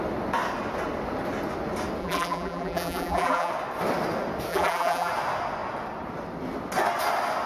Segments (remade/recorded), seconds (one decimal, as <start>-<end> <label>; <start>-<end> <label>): 0.0-2.0 recorded; 2.0-3.5 remade; 3.5-4.5 recorded; 4.5-5.1 remade; 5.1-7.5 recorded